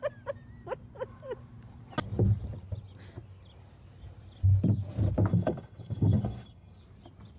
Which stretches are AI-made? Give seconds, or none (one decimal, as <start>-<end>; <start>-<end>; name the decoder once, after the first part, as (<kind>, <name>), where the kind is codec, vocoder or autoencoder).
5.3-6.8 (codec, DAC)